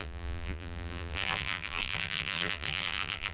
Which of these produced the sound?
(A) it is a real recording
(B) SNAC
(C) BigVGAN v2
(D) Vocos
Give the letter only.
C